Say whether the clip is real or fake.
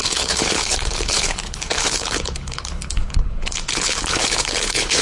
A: fake